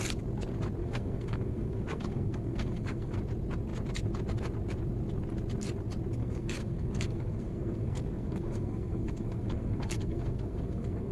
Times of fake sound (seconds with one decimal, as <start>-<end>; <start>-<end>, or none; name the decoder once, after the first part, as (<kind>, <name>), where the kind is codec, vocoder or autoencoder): 0.8-3.2 (codec, SNAC); 6.2-11.1